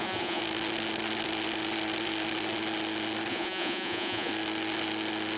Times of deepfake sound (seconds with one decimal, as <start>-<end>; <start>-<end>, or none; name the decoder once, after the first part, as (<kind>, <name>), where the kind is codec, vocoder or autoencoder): 0.0-0.4 (vocoder, Vocos); 3.3-4.3